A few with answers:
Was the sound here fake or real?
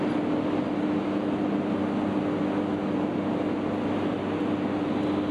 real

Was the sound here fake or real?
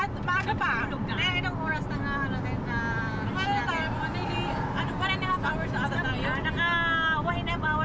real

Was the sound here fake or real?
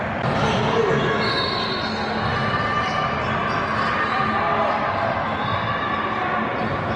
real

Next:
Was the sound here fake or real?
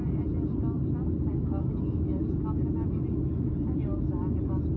real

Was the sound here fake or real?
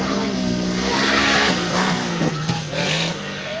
fake